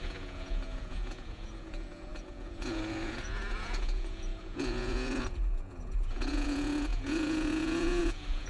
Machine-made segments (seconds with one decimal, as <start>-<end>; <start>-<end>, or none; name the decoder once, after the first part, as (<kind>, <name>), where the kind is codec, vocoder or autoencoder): 0.0-8.5 (vocoder, Vocos)